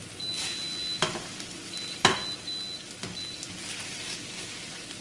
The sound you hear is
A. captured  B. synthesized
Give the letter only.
A